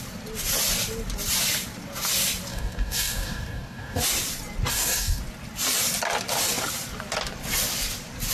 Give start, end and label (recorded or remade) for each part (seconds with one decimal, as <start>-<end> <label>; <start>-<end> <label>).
0.0-2.5 recorded; 2.5-4.0 remade; 4.0-4.7 recorded; 4.7-5.2 remade; 5.2-8.3 recorded